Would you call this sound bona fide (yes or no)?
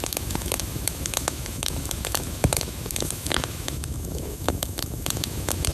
no